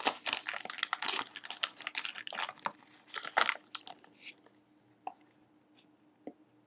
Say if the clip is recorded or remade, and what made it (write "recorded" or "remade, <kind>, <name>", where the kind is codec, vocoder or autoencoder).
recorded